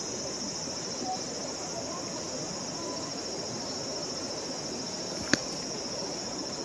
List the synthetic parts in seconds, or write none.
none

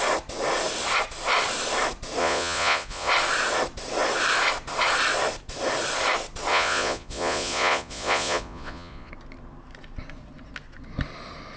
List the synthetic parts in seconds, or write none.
2.2-3.1 (vocoder, Vocos); 6.5-9.1

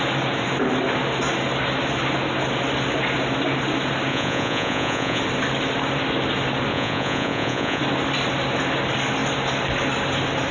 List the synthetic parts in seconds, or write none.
4.1-5.2 (vocoder, Vocos); 6.7-7.8

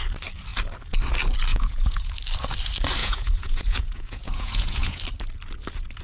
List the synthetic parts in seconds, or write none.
1.5-2.1 (vocoder, Vocos); 3.0-5.0